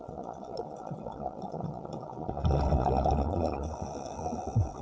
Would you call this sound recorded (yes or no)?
no